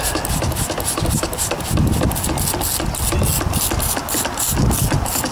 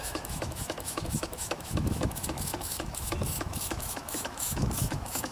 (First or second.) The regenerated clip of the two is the second